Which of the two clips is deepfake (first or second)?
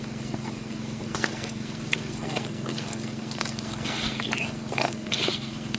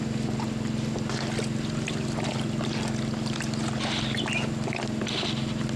first